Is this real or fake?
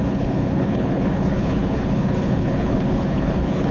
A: fake